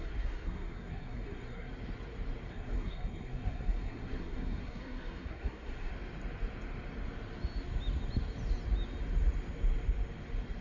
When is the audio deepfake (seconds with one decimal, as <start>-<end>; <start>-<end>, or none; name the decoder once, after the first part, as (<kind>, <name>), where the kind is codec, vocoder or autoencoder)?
0.0-1.7 (codec, SNAC); 2.5-5.9